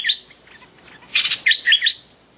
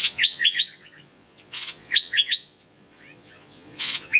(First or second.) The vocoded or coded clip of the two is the second